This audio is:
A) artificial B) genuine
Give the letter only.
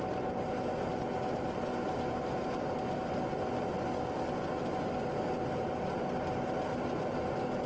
B